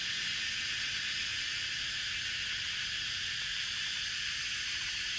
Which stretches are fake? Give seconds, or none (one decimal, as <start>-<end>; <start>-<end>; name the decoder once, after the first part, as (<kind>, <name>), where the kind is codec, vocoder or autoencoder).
none